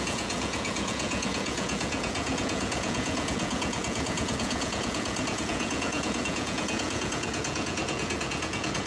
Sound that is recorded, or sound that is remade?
remade